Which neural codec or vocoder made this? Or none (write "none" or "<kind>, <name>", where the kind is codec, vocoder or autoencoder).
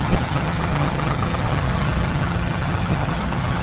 vocoder, HiFi-GAN